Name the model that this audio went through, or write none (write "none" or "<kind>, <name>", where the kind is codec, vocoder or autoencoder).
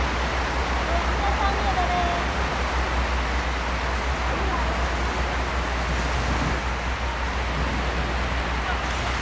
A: none